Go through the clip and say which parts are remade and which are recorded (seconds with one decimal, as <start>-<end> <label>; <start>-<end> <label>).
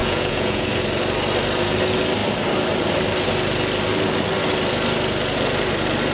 0.0-0.7 remade; 0.7-6.1 recorded